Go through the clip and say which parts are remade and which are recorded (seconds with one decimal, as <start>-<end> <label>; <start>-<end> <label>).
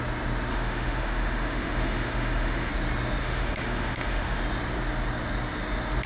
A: 0.0-0.5 recorded; 0.5-2.7 remade; 2.7-3.2 recorded; 3.2-4.4 remade; 4.4-6.1 recorded